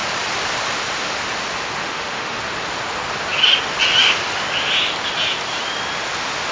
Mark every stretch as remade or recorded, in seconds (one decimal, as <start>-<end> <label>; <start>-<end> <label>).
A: 0.0-1.8 recorded; 1.8-2.4 remade; 2.4-6.5 recorded